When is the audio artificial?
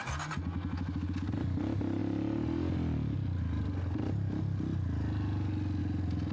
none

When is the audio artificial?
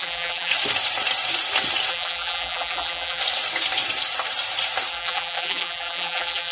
0.0-0.5 (vocoder, BigVGAN v2); 1.9-3.2; 4.9-6.5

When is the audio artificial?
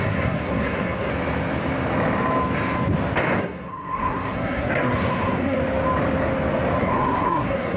0.0-1.1 (codec, SNAC); 3.4-5.6; 6.8-7.8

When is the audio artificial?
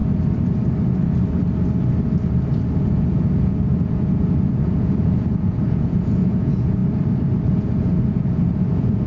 2.8-6.8 (vocoder, Vocos); 7.5-9.1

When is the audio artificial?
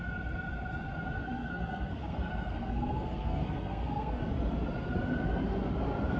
1.2-4.2 (codec, SNAC)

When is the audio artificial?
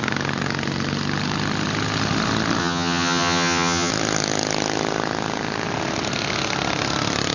2.6-3.9 (vocoder, HiFi-GAN)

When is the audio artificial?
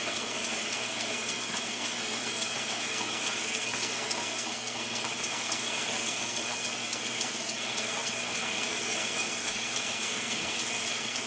0.0-11.3 (codec, SNAC)